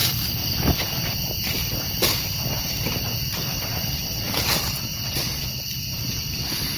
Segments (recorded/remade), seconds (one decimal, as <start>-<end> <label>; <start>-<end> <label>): 0.0-1.6 remade; 1.6-2.6 recorded; 2.6-6.8 remade